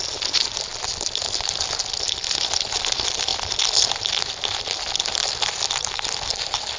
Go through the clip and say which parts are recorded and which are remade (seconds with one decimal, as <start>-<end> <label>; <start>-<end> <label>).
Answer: 0.0-0.7 recorded; 0.7-1.3 remade; 1.3-5.2 recorded; 5.2-5.9 remade; 5.9-6.8 recorded

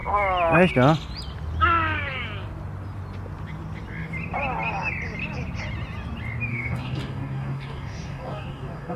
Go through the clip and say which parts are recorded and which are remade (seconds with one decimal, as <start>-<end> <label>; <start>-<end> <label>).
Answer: 0.0-6.5 recorded; 6.5-9.0 remade

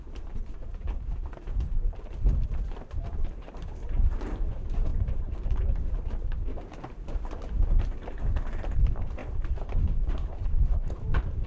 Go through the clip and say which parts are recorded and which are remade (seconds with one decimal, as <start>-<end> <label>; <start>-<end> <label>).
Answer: 0.0-11.5 remade

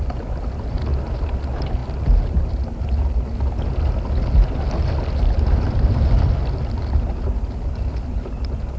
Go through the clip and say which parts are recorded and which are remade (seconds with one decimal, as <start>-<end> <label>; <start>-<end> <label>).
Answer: 0.0-8.8 recorded

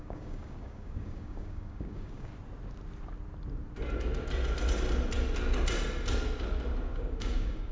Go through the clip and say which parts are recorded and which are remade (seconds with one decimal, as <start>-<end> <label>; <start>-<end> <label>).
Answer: 0.0-2.3 remade; 2.3-6.9 recorded; 6.9-7.7 remade

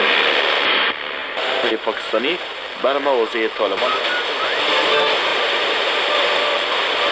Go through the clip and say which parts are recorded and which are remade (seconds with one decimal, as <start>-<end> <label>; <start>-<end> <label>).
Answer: 0.0-1.2 recorded; 1.2-2.6 remade; 2.6-5.3 recorded; 5.3-6.3 remade; 6.3-7.1 recorded

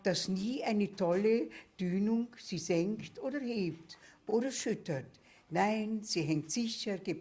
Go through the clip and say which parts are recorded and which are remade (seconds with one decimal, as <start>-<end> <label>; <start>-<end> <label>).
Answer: 0.0-4.3 recorded; 4.3-6.5 remade; 6.5-7.2 recorded

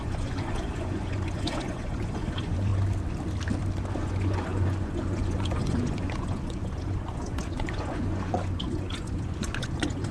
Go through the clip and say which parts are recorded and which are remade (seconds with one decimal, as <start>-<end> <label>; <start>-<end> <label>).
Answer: 0.0-2.7 remade; 2.7-3.9 recorded; 3.9-10.1 remade